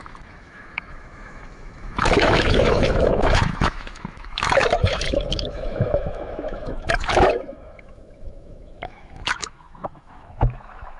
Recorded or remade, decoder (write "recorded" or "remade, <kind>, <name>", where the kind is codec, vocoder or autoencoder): remade, autoencoder, DAC-VAE